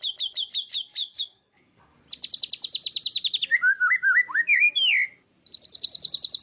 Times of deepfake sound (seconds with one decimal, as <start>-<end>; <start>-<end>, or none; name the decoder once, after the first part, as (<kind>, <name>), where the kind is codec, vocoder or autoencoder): 1.0-2.0 (codec, DAC)